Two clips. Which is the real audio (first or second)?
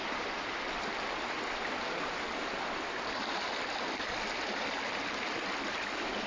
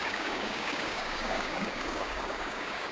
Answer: first